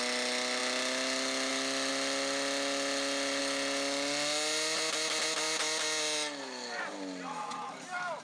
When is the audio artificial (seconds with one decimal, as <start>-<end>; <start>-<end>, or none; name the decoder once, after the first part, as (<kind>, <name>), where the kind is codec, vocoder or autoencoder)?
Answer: none